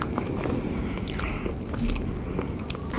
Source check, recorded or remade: recorded